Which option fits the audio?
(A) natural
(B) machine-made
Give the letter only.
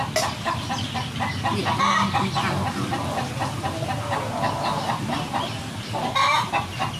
A